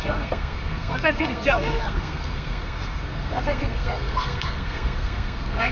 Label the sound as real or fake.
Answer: fake